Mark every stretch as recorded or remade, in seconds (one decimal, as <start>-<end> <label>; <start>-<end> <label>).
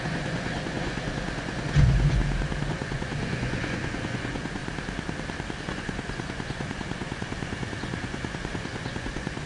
0.0-2.2 remade; 2.2-2.7 recorded; 2.7-4.6 remade; 4.6-5.6 recorded; 5.6-9.5 remade